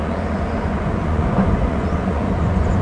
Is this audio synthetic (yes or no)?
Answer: yes